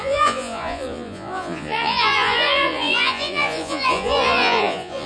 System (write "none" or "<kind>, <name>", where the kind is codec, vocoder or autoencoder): vocoder, Vocos